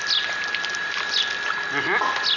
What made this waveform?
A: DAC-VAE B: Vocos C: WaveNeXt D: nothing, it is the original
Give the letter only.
D